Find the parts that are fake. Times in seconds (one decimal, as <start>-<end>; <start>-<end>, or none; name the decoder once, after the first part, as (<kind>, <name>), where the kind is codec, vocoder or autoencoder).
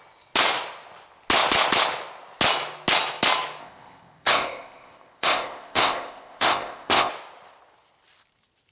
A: 3.6-7.1 (codec, ZipCodec)